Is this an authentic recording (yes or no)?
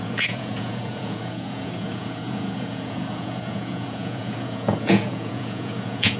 no